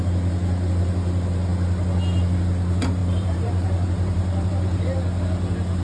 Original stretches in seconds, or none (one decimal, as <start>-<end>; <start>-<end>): 0.0-3.0; 4.8-5.8